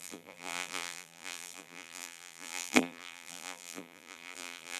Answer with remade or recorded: remade